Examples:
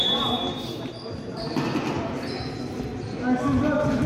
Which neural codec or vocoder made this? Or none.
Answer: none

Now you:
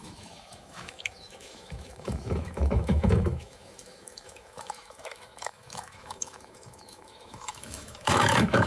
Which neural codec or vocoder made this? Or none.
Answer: autoencoder, DAC-VAE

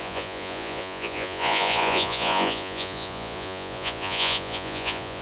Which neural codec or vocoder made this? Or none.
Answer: vocoder, Vocos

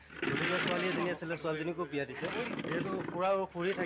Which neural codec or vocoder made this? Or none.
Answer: none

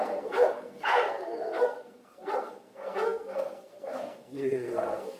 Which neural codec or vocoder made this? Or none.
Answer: codec, SNAC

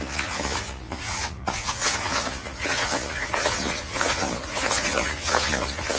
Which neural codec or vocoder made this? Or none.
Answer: vocoder, Vocos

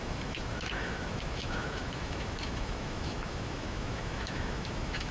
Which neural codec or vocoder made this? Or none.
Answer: autoencoder, DAC-VAE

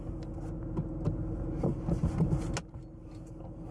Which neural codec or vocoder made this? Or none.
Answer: none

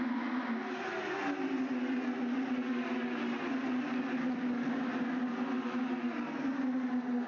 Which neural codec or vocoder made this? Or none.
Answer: none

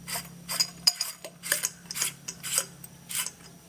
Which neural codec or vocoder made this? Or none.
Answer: none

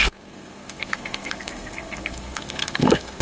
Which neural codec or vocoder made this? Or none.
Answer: codec, SNAC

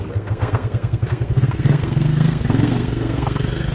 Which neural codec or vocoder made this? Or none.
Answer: codec, SNAC